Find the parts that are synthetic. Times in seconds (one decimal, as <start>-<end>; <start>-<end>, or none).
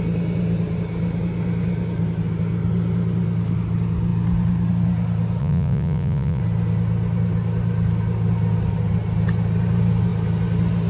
5.4-6.4